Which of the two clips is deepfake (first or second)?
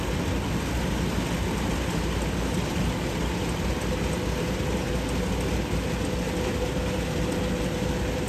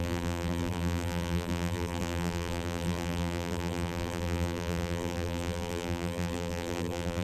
second